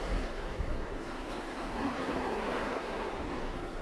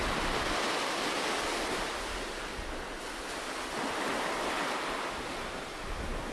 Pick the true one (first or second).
second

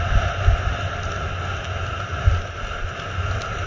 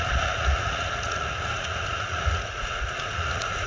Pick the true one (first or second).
first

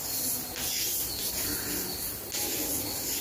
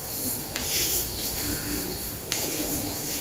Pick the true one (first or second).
first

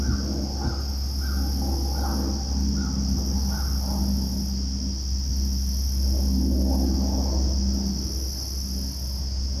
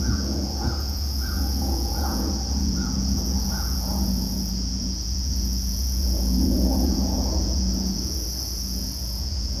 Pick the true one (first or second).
first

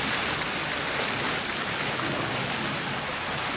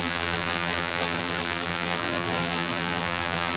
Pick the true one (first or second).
first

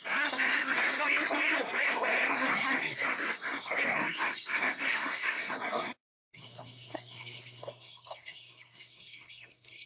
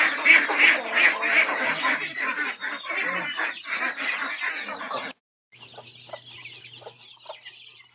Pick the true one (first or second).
second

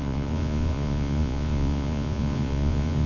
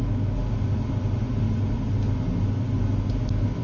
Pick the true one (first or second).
second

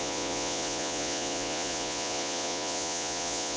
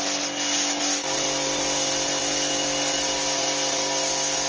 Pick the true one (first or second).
second